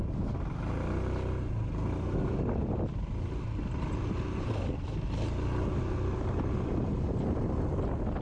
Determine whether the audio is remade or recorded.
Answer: recorded